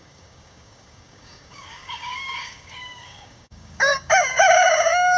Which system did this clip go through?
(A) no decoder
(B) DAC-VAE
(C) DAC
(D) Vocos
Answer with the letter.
C